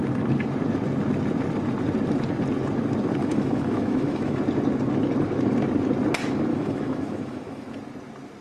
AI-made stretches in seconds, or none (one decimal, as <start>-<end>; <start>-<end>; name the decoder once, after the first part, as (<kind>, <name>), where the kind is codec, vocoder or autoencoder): 3.2-4.4 (autoencoder, DAC-VAE); 6.5-7.8